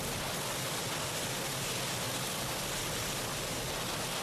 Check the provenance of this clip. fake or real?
real